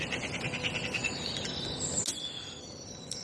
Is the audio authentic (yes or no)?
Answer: yes